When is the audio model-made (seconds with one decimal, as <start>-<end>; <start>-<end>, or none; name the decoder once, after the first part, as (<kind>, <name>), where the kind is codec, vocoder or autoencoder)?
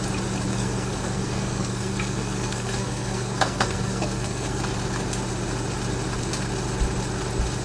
0.5-4.6 (codec, SNAC)